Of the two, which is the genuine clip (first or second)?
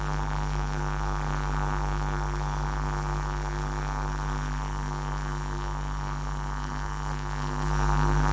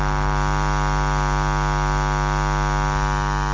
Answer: second